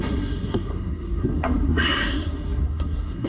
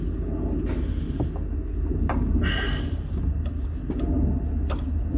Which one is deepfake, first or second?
first